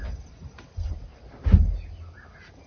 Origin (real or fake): real